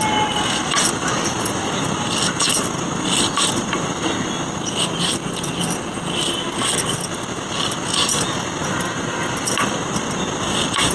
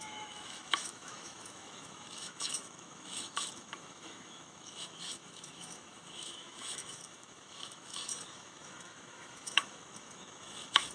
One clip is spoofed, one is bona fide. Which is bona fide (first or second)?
first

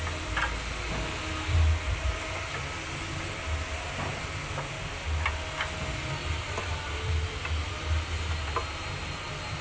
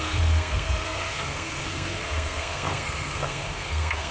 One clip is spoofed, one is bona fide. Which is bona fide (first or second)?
first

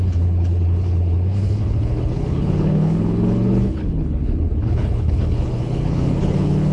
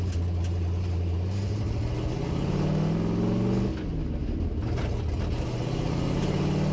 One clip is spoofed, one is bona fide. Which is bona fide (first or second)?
second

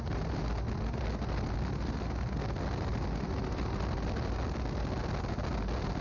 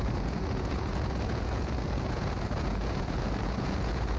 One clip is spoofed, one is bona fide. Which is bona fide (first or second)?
first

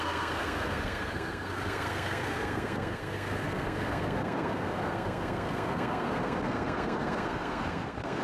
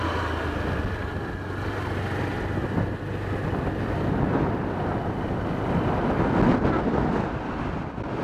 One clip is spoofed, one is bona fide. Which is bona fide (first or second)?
second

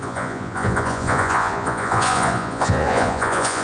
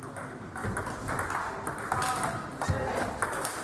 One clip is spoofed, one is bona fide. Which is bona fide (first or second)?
second